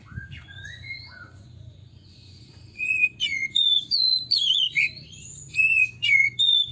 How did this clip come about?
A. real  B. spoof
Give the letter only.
B